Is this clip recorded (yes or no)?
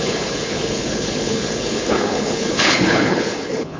no